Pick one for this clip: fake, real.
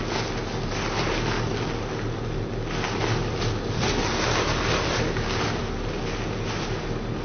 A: real